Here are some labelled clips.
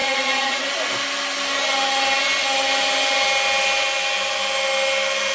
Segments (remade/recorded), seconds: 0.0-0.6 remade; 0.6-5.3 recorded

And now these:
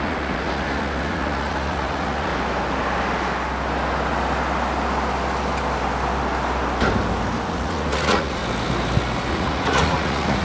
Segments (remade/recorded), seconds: 0.0-2.3 remade; 2.3-7.5 recorded; 7.5-8.4 remade; 8.4-9.3 recorded; 9.3-10.4 remade

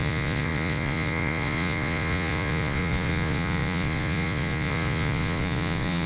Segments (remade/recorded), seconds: 0.0-6.1 remade